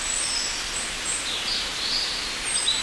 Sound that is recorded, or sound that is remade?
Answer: recorded